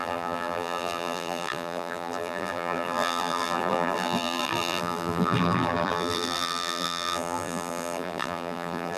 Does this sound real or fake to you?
fake